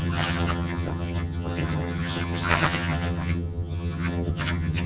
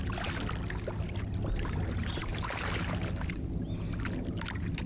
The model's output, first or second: first